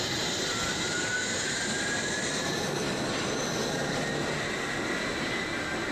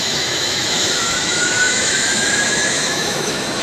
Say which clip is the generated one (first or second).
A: second